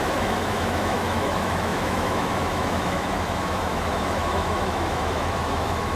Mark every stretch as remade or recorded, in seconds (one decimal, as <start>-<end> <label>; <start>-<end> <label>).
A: 0.0-6.0 remade